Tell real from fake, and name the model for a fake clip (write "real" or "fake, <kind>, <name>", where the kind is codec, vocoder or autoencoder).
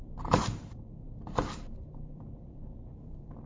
fake, vocoder, BigVGAN v2